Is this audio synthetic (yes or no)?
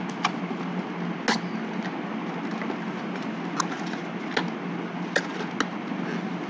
no